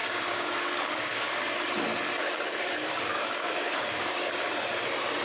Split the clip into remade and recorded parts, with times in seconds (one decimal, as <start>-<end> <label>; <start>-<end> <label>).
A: 0.0-1.4 remade; 1.4-2.2 recorded; 2.2-4.3 remade; 4.3-5.2 recorded